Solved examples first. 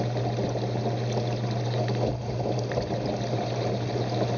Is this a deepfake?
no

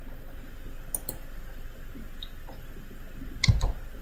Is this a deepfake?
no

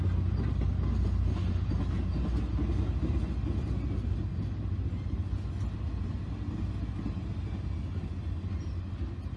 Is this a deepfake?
no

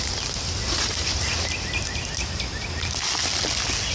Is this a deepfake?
no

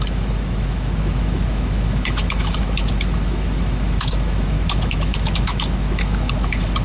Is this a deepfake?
yes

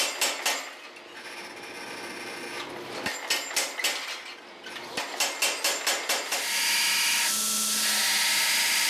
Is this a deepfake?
no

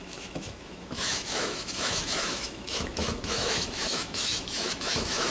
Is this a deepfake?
yes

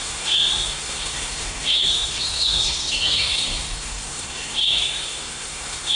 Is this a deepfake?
yes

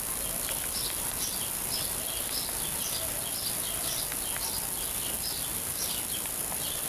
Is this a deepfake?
no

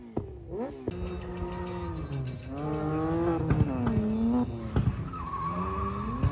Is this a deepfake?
no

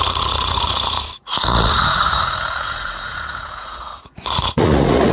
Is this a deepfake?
yes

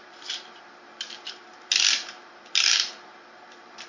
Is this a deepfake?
yes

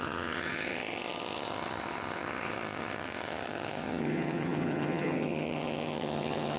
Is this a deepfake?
yes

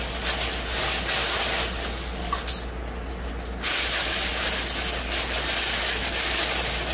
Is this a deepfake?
no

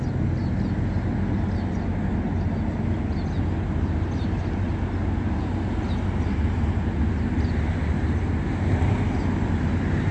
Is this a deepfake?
no